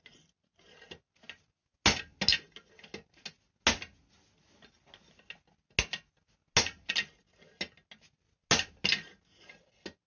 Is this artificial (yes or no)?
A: no